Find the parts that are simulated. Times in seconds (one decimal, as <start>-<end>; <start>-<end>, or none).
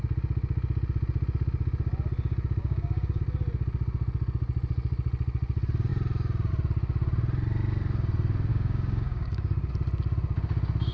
2.6-3.2; 8.5-9.7